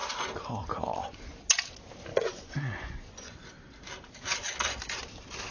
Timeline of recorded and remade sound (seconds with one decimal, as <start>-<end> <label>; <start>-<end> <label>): 0.0-2.1 recorded; 2.1-3.5 remade; 3.5-5.5 recorded